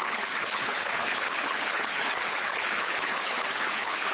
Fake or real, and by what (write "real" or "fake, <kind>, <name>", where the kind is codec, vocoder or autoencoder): fake, codec, HILCodec